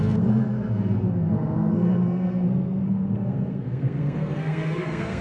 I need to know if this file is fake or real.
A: fake